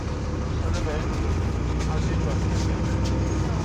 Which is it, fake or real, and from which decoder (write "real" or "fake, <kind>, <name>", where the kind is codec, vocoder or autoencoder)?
fake, vocoder, BigVGAN v2